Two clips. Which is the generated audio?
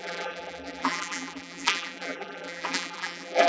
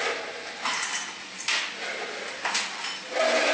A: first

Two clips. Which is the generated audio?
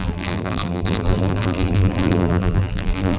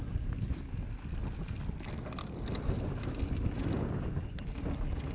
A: first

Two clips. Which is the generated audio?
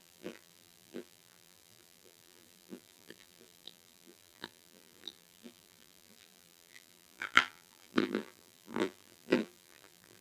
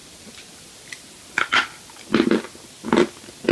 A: first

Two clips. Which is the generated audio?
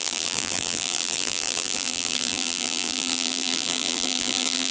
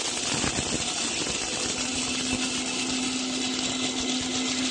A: first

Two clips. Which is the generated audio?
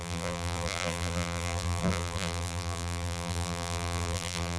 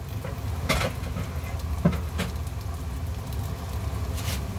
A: first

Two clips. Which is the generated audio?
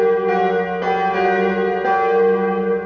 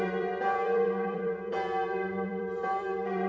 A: second